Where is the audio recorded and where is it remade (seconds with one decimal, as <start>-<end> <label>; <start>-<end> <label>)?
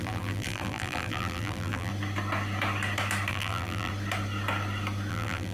0.0-1.9 remade; 1.9-3.3 recorded; 3.3-3.9 remade; 3.9-5.1 recorded; 5.1-5.5 remade